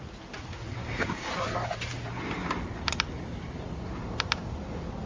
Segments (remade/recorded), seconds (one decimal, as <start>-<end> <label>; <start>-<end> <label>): 0.0-0.8 recorded; 0.8-1.3 remade; 1.3-5.1 recorded